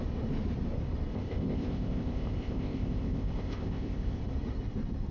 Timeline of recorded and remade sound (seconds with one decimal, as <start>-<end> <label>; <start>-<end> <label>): 0.0-1.1 recorded; 1.1-4.2 remade; 4.2-5.1 recorded